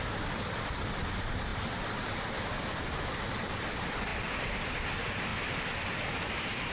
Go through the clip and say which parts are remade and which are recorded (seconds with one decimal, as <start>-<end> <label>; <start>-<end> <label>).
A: 0.0-6.7 recorded